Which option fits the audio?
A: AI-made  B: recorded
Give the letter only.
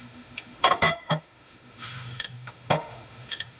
A